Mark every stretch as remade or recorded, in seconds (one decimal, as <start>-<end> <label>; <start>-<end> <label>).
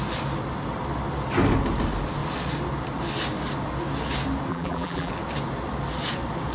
0.0-4.5 recorded; 4.5-5.1 remade; 5.1-6.5 recorded